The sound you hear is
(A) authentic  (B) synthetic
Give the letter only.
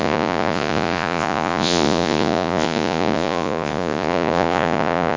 B